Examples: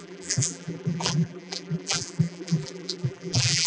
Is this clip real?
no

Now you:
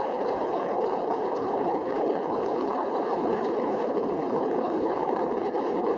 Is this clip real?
no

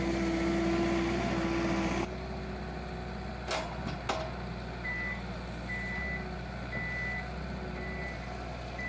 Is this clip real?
yes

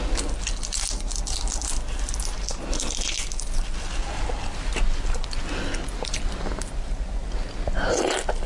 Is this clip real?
yes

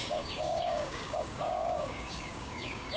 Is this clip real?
no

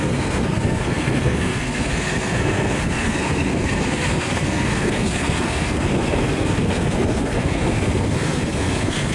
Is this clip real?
no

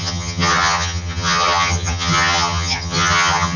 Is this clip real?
no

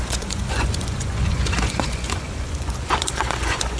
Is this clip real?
no